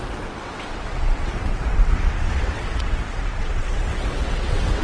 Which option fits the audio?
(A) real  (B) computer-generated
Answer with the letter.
B